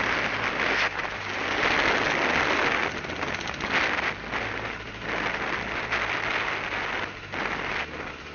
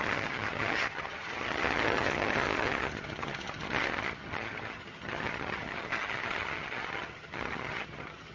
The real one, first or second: first